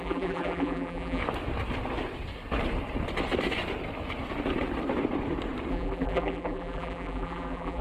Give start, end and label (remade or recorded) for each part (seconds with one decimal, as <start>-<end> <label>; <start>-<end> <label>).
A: 0.0-1.2 remade; 1.2-5.7 recorded; 5.7-7.8 remade